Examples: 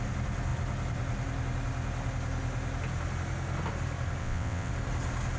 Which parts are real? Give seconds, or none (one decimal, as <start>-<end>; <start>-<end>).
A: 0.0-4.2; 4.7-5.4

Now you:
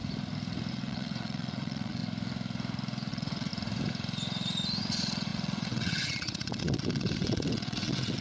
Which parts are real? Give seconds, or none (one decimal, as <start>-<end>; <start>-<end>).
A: 0.0-0.7; 2.0-3.1; 3.5-4.8

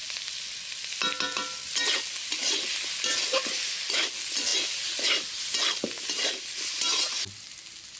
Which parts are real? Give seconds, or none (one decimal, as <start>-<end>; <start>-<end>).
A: 0.0-8.0